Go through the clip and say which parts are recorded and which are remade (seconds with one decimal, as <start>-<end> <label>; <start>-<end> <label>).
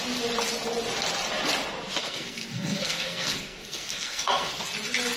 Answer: 0.0-2.0 recorded; 2.0-4.6 remade; 4.6-5.2 recorded